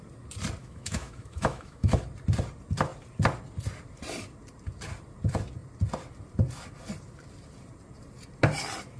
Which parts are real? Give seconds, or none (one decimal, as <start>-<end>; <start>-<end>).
0.0-0.6; 2.0-9.0